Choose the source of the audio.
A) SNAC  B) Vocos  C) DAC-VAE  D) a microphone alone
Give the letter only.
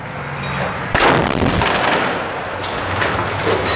D